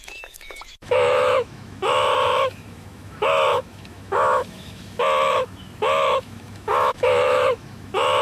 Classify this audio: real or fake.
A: fake